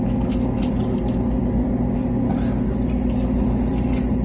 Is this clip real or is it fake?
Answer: real